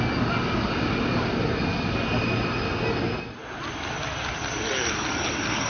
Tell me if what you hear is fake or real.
real